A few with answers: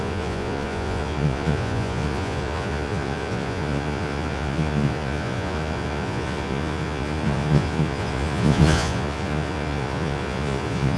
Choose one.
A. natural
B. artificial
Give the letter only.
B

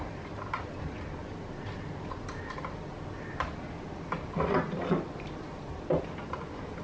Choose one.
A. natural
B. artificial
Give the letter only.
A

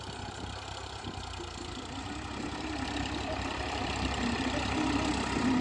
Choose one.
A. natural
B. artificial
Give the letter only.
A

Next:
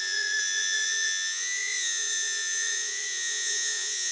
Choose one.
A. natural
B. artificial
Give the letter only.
B